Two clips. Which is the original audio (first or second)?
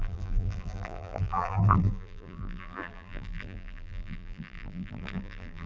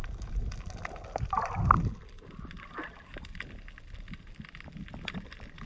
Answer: second